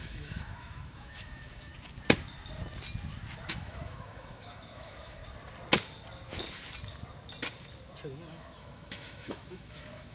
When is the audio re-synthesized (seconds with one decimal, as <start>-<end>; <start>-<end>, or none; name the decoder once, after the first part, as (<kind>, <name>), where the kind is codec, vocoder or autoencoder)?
0.0-1.7 (autoencoder, DAC-VAE); 3.5-5.2; 8.3-10.1